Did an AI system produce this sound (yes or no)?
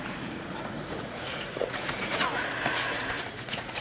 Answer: yes